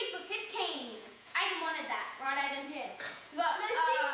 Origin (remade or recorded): remade